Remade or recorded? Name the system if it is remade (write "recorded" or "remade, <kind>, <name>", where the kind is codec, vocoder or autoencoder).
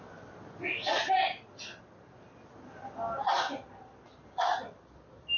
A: recorded